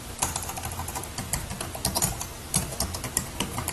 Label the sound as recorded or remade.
recorded